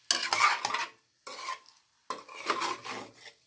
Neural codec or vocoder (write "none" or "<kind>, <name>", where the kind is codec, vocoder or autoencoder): none